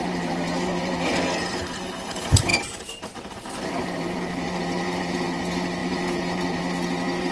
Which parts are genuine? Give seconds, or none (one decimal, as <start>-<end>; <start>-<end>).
none